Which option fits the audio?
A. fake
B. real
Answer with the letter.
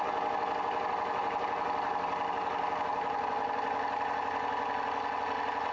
B